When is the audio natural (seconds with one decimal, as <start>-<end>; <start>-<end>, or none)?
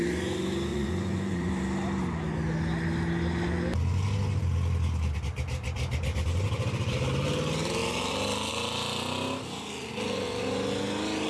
0.0-0.7; 1.5-11.3